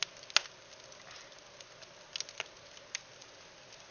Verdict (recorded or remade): recorded